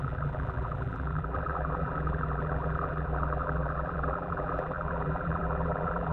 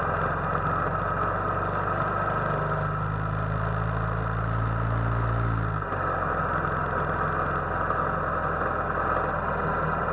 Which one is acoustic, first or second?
second